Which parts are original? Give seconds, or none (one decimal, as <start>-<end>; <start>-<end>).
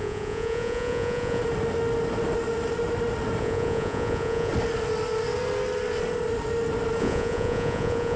1.4-3.4; 4.5-7.0